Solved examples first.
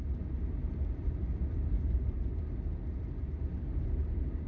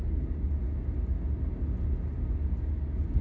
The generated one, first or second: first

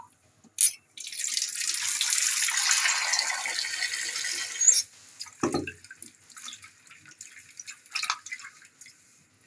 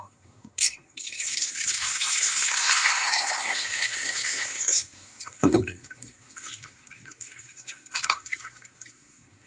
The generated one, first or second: second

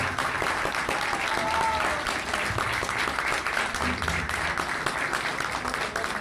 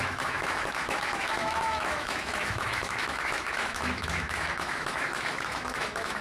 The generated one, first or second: second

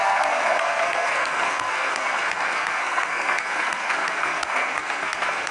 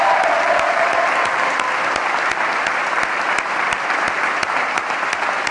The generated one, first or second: first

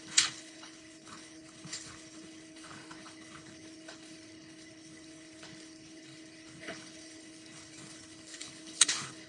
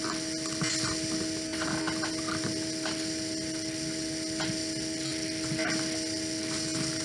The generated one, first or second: first